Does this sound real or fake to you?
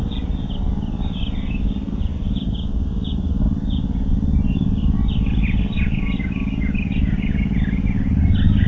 real